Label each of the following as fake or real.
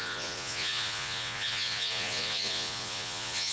fake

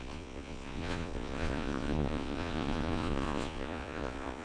fake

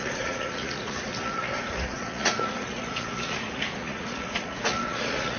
fake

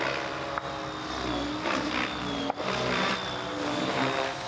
real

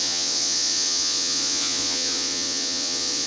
fake